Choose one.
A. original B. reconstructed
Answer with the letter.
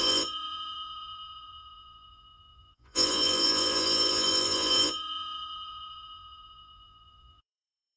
B